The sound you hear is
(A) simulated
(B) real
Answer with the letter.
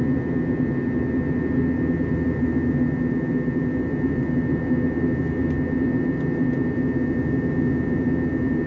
B